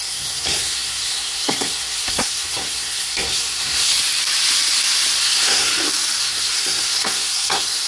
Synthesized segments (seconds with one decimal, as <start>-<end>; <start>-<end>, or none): 0.0-3.9; 5.2-5.7; 6.2-7.9